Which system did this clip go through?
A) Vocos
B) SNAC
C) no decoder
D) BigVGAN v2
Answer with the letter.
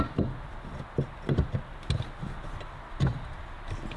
C